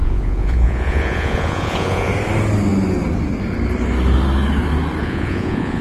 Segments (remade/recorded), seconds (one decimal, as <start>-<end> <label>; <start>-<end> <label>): 0.0-2.1 remade; 2.1-5.0 recorded; 5.0-5.8 remade